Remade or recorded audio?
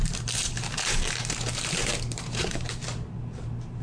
remade